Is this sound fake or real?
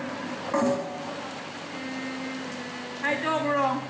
real